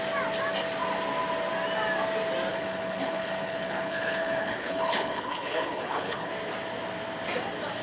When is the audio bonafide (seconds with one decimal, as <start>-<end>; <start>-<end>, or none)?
0.0-2.5; 6.3-7.8